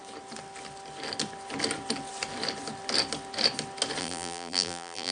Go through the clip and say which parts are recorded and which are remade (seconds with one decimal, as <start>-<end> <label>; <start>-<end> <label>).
0.0-4.0 recorded; 4.0-5.1 remade